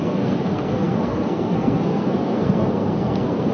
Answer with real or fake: fake